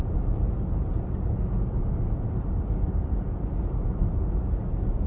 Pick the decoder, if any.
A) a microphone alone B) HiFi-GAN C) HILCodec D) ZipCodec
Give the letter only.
A